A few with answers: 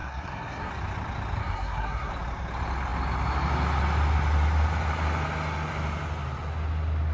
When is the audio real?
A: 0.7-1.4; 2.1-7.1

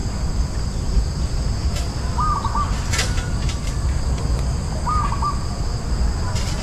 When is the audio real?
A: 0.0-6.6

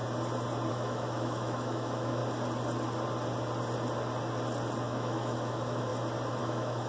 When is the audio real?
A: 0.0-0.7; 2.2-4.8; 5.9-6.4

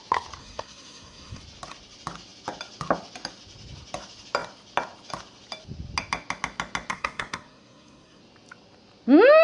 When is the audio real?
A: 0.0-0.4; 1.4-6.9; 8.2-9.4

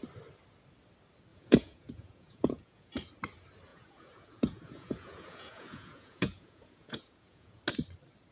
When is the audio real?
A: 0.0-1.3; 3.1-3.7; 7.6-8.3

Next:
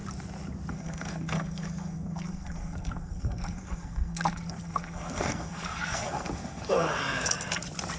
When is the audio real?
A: 0.0-0.7; 7.0-8.0

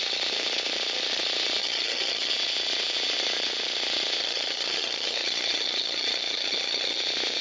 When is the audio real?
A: 0.0-1.6; 2.3-4.2; 7.0-7.4